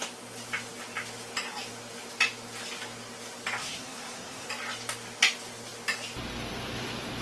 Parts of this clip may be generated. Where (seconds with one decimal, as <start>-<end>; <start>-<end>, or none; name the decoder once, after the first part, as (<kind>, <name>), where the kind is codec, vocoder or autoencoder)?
3.6-4.5 (codec, SNAC)